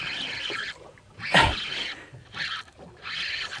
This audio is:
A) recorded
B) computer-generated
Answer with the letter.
A